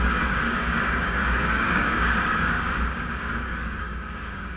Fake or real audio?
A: fake